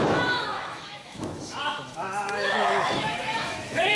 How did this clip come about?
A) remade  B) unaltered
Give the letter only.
A